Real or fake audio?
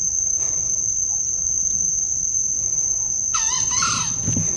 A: real